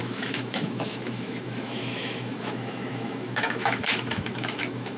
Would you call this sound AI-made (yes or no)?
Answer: yes